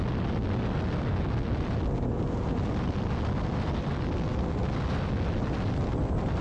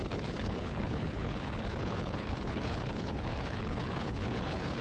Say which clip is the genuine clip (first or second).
first